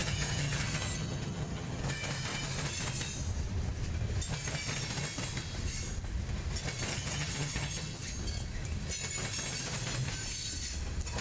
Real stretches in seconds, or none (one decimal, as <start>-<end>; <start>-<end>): 1.8-6.9; 8.1-11.2